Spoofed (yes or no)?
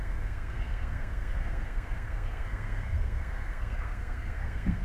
yes